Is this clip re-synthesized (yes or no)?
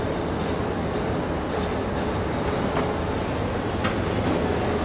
no